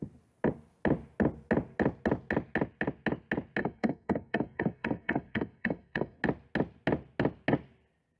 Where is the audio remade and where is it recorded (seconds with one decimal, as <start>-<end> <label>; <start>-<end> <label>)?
0.0-3.6 recorded; 3.6-6.2 remade; 6.2-8.2 recorded